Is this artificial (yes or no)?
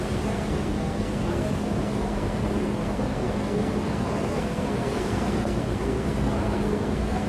yes